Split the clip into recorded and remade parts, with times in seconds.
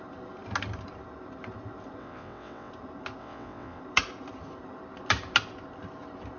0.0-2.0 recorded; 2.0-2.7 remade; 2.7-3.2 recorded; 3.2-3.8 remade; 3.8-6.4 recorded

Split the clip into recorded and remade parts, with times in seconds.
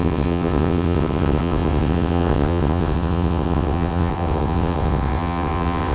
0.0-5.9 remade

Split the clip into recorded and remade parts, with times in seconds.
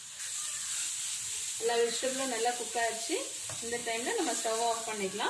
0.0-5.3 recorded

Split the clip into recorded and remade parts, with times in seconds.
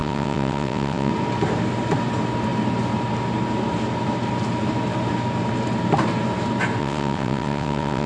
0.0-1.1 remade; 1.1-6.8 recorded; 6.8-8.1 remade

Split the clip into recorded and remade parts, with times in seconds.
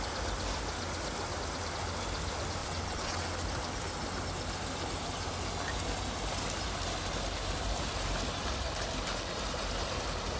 0.0-2.6 recorded; 2.6-3.3 remade; 3.3-10.4 recorded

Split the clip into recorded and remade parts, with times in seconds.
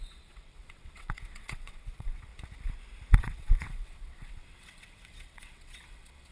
0.0-2.3 remade; 2.3-3.2 recorded; 3.2-6.3 remade